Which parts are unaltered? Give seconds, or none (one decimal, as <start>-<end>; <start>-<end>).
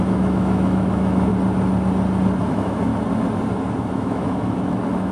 1.3-2.4; 2.9-3.8